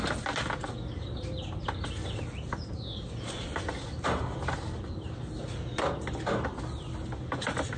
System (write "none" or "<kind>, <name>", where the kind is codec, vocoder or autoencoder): none